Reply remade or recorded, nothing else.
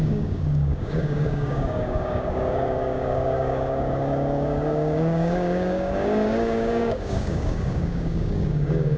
remade